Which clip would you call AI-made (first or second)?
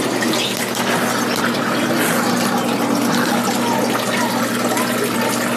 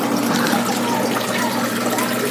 second